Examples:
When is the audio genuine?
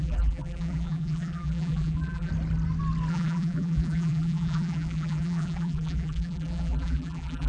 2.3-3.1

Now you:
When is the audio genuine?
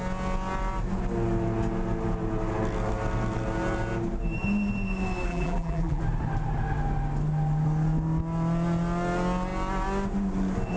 0.0-5.3; 6.0-10.8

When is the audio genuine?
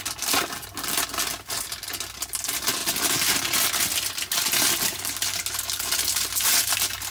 0.0-7.1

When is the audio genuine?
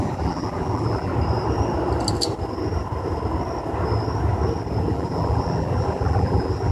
1.1-4.9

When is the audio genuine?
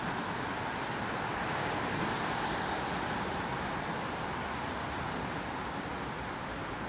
0.0-6.9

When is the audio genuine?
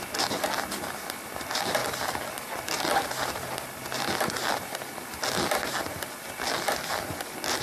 0.0-7.6